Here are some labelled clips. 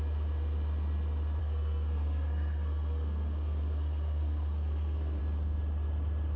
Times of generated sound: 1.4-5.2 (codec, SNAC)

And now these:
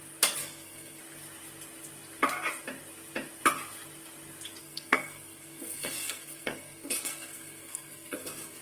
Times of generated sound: 0.4-1.0 (codec, SNAC); 4.6-8.6

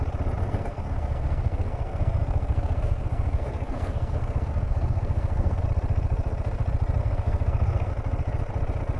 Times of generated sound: 0.4-5.6 (codec, SNAC); 7.0-7.9